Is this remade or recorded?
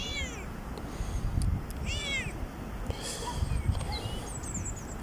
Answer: recorded